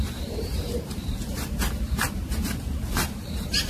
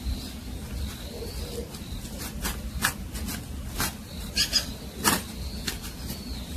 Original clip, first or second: second